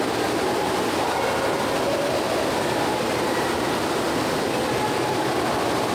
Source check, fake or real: real